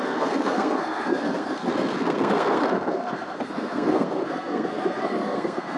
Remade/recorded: remade